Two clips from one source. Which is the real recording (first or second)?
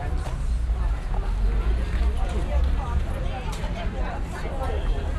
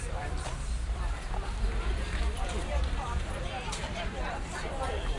first